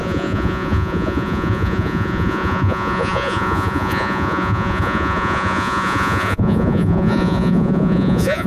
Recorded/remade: remade